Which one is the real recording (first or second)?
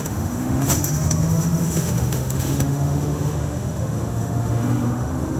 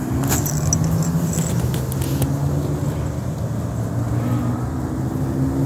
second